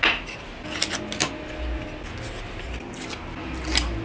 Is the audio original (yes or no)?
yes